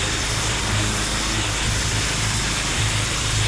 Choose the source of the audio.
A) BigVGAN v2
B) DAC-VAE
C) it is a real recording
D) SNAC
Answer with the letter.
A